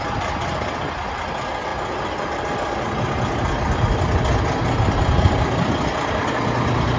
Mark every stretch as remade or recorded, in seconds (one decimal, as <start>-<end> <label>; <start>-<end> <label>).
0.0-7.0 recorded